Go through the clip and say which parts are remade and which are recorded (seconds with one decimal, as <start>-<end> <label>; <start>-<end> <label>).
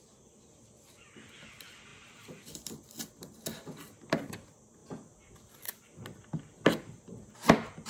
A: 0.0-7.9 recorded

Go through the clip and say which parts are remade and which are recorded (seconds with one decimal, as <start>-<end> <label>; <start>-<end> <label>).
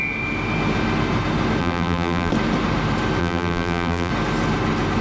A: 0.0-1.6 recorded; 1.6-2.3 remade; 2.3-3.2 recorded; 3.2-4.1 remade; 4.1-5.0 recorded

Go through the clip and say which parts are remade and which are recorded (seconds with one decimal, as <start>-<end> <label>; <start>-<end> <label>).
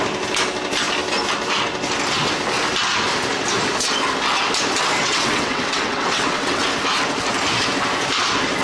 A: 0.0-5.0 recorded; 5.0-6.6 remade; 6.6-8.6 recorded